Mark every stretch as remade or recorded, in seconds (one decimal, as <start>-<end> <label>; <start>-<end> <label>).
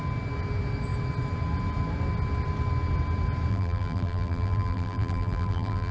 0.0-3.5 recorded; 3.5-5.9 remade